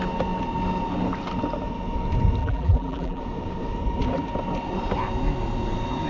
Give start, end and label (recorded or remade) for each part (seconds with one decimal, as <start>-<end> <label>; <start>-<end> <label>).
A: 0.0-2.4 recorded; 2.4-3.2 remade; 3.2-6.1 recorded

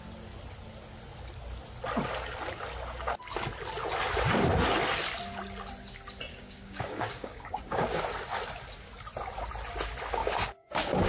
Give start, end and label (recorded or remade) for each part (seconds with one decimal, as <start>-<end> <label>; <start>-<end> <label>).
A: 0.0-6.3 recorded; 6.3-8.0 remade; 8.0-10.2 recorded; 10.2-11.1 remade

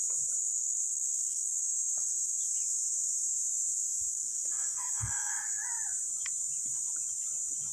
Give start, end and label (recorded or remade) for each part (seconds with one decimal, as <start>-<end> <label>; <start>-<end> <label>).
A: 0.0-0.4 recorded; 0.4-1.6 remade; 1.6-4.1 recorded; 4.1-5.3 remade; 5.3-7.7 recorded

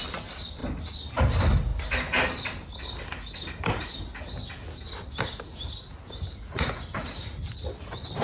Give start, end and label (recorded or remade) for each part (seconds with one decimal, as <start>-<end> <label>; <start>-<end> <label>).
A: 0.0-8.2 recorded

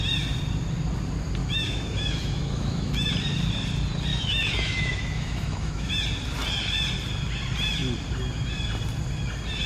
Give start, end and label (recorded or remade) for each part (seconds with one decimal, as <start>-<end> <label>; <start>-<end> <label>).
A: 0.0-1.4 recorded; 1.4-3.1 remade; 3.1-4.1 recorded; 4.1-5.9 remade; 5.9-9.7 recorded

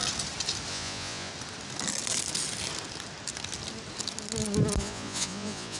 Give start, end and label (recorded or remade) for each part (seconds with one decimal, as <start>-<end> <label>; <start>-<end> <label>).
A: 0.0-0.7 recorded; 0.7-1.3 remade; 1.3-4.8 recorded; 4.8-5.8 remade

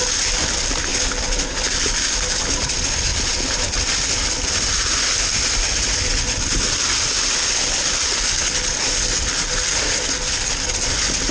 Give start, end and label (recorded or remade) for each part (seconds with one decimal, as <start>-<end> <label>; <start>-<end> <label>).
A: 0.0-11.3 recorded